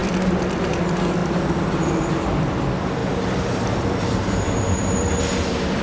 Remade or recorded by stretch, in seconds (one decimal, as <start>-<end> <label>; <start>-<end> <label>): 0.0-0.7 remade; 0.7-3.0 recorded; 3.0-5.8 remade

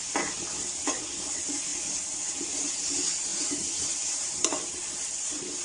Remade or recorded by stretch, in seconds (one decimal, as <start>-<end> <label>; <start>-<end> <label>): 0.0-3.3 recorded; 3.3-5.6 remade

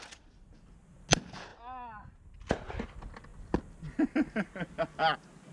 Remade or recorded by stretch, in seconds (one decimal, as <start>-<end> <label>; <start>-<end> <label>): 0.0-5.5 recorded

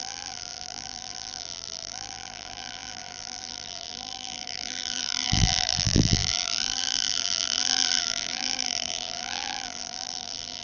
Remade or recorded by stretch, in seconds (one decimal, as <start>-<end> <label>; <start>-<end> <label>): 0.0-10.6 remade

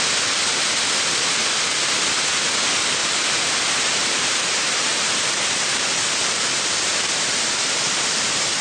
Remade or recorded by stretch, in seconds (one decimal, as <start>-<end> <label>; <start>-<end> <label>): 0.0-1.4 recorded; 1.4-1.9 remade; 1.9-3.0 recorded; 3.0-3.6 remade; 3.6-4.0 recorded; 4.0-8.6 remade

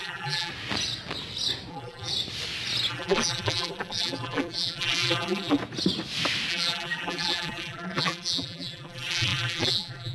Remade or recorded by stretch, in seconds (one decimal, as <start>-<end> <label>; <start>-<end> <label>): 0.0-0.5 remade; 0.5-1.7 recorded; 1.7-2.1 remade; 2.1-2.9 recorded; 2.9-5.6 remade; 5.6-6.5 recorded; 6.5-10.1 remade

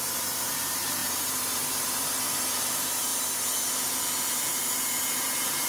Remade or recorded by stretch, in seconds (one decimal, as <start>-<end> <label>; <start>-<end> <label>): 0.0-3.1 remade; 3.1-4.3 recorded; 4.3-5.7 remade